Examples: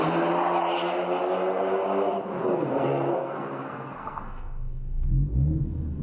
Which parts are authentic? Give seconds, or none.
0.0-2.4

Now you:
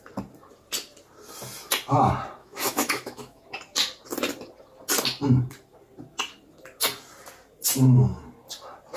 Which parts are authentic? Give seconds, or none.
0.0-2.4; 3.4-9.0

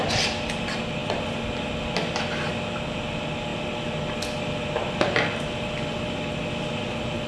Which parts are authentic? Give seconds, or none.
0.0-7.3

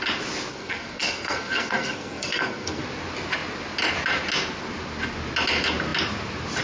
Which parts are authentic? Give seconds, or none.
0.0-0.5; 2.8-6.6